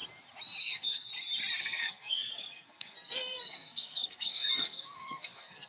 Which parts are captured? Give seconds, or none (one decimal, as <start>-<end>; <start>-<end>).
0.0-0.6; 1.1-1.6